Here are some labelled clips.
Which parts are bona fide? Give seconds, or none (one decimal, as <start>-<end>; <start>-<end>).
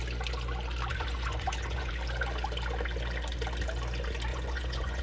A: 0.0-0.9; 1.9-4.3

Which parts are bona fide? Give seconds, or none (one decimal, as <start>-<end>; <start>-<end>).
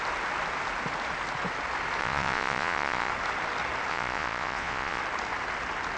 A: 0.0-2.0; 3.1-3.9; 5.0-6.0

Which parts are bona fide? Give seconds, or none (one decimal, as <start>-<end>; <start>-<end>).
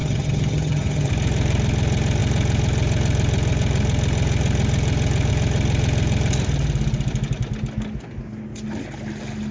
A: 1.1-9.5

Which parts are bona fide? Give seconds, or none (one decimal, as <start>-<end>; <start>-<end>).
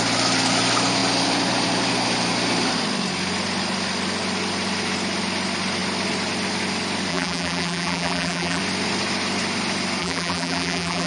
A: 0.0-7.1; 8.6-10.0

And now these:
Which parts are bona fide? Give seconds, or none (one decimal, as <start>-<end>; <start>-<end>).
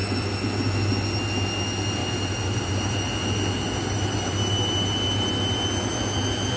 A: 0.0-2.0; 4.3-6.6